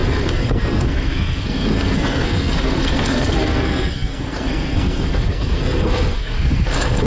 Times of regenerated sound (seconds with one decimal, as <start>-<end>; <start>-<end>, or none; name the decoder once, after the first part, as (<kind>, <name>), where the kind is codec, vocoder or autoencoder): 0.0-7.1 (codec, SNAC)